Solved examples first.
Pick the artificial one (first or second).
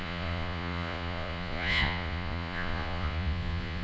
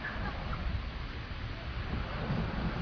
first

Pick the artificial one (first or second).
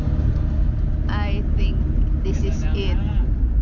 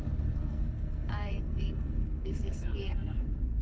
second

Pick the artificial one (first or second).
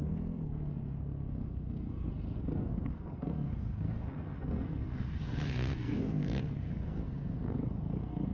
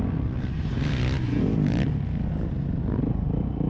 first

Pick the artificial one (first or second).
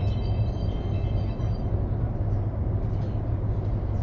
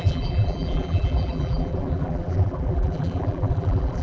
second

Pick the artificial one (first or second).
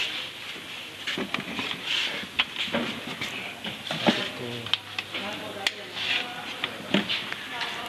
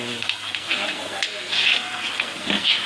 second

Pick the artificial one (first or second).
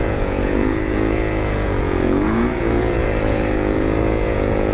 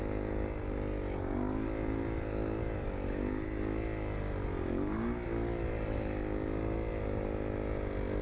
first